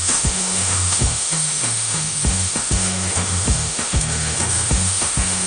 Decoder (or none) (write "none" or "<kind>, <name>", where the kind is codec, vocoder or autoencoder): autoencoder, DAC-VAE